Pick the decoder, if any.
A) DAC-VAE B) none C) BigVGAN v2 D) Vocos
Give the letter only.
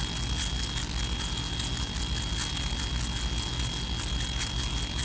B